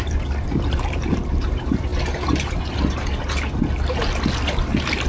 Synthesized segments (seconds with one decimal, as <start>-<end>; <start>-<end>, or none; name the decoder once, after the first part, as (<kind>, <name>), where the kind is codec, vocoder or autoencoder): 0.0-1.9 (vocoder, BigVGAN v2)